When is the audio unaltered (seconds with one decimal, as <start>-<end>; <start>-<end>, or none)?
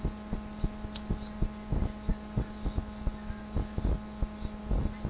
0.0-5.1